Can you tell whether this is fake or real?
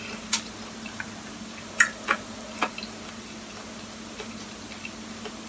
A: real